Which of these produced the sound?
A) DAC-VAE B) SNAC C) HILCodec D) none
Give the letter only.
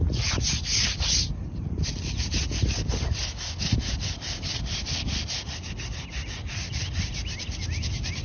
D